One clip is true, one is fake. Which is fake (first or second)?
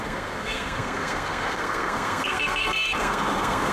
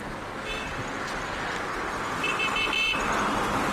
first